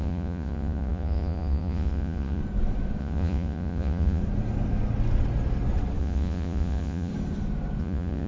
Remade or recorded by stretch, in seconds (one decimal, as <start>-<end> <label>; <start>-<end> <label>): 0.0-2.4 remade; 2.4-3.0 recorded; 3.0-4.2 remade; 4.2-6.0 recorded; 6.0-7.1 remade; 7.1-7.8 recorded; 7.8-8.3 remade